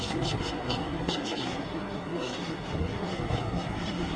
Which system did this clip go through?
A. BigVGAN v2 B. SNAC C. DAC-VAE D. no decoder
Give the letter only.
B